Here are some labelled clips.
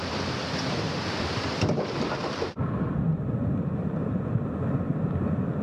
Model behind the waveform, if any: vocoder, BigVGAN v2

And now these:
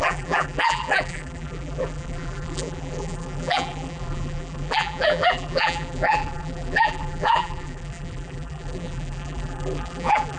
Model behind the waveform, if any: vocoder, BigVGAN v2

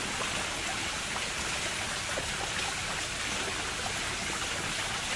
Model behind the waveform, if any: none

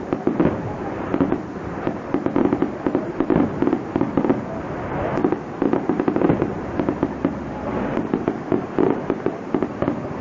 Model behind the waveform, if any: vocoder, BigVGAN v2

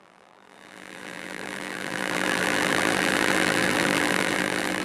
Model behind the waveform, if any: vocoder, BigVGAN v2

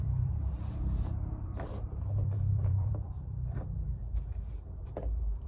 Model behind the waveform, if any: vocoder, BigVGAN v2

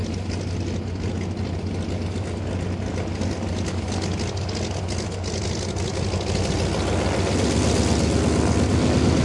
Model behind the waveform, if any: none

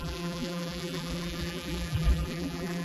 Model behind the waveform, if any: vocoder, BigVGAN v2